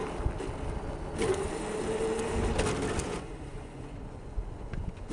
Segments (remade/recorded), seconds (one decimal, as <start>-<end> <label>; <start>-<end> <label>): 0.0-3.0 recorded; 3.0-5.1 remade